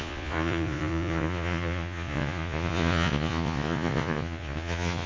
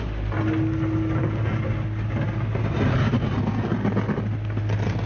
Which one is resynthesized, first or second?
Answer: first